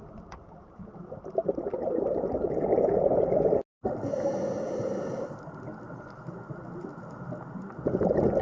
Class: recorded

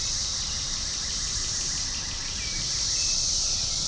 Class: recorded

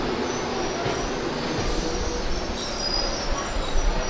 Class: recorded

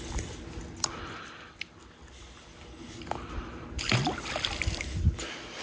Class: recorded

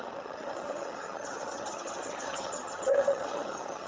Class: remade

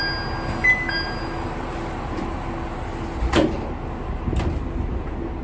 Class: recorded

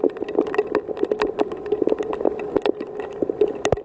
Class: recorded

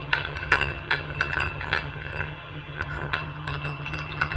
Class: remade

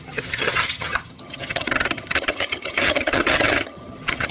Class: remade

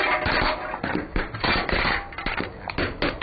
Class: recorded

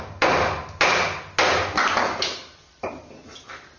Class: recorded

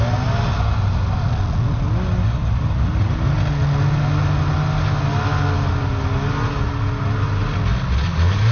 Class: recorded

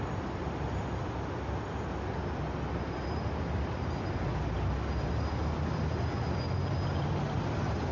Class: recorded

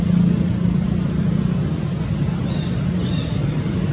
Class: recorded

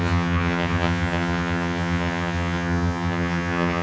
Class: remade